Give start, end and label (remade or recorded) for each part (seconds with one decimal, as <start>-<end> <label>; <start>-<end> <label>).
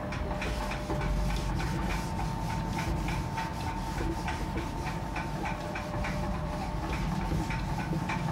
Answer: 0.0-3.5 recorded; 3.5-7.2 remade; 7.2-8.3 recorded